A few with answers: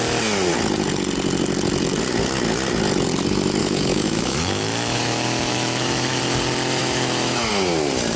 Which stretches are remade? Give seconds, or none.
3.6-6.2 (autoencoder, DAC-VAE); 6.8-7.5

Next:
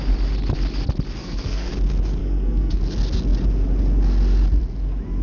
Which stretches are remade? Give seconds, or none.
1.2-1.7 (codec, SNAC); 2.2-2.8

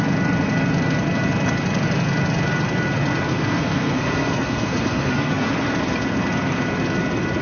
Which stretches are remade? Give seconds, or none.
3.3-5.5 (codec, SNAC)